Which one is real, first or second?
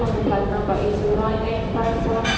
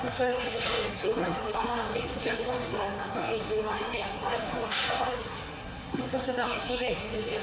first